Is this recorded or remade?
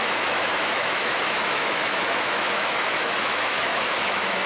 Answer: remade